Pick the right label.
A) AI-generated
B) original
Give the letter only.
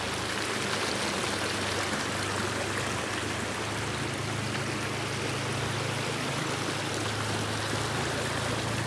B